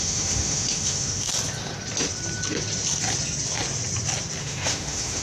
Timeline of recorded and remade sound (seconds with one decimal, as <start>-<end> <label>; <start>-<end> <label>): 0.0-1.3 remade; 1.3-4.4 recorded; 4.4-5.2 remade